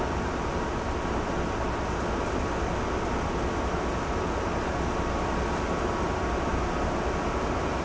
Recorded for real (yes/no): yes